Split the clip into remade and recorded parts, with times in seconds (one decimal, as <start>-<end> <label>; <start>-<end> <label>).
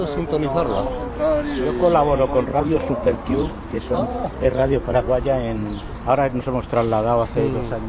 0.0-2.5 recorded; 2.5-5.0 remade; 5.0-7.9 recorded